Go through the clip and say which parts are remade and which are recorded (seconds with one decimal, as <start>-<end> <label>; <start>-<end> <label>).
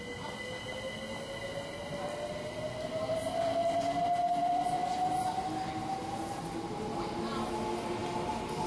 0.0-8.7 recorded